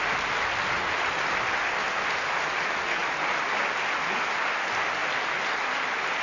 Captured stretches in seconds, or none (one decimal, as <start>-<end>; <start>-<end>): 0.0-6.2